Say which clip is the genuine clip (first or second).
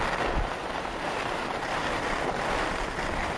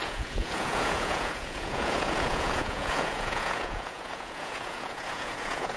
first